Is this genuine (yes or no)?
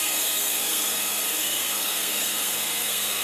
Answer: no